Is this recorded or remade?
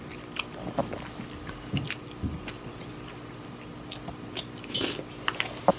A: recorded